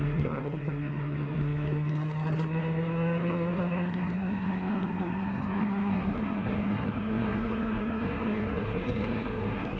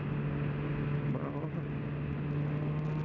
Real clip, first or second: second